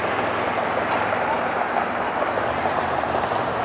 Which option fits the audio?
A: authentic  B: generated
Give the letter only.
A